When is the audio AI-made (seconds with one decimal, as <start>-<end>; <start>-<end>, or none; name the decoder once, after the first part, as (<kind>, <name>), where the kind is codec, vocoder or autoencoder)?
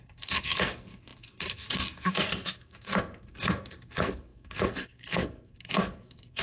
0.0-6.4 (codec, SNAC)